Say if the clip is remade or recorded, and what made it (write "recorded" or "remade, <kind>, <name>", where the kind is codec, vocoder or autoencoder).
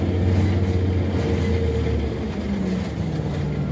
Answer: recorded